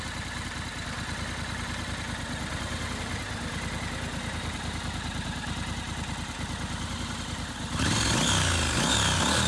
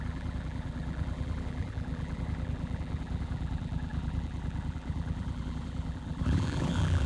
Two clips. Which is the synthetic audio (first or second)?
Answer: second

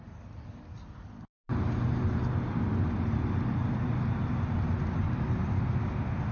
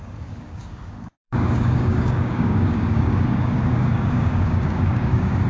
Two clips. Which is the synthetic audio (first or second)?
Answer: second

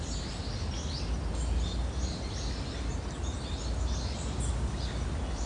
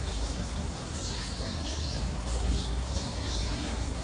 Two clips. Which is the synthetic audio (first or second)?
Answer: second